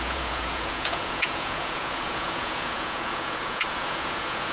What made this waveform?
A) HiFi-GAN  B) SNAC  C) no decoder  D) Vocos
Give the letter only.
D